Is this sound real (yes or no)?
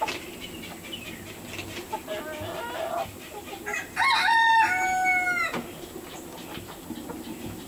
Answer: yes